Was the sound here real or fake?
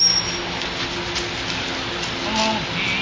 real